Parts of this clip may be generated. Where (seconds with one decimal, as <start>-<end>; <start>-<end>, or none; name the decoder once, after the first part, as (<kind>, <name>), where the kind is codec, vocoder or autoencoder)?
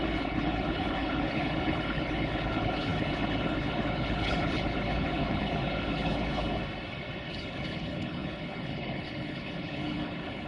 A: 0.0-6.6 (codec, HILCodec); 7.3-10.5